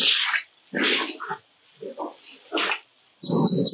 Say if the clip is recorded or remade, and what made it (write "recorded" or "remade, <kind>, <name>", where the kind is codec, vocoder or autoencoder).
recorded